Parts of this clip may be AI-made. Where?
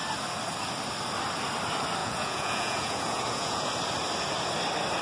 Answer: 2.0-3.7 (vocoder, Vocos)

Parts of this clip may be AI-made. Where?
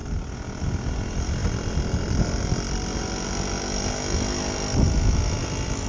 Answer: none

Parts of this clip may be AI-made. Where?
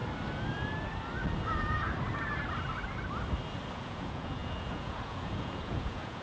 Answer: 3.7-6.2 (vocoder, Vocos)